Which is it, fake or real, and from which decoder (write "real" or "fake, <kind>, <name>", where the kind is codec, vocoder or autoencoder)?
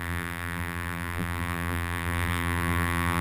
fake, vocoder, BigVGAN v2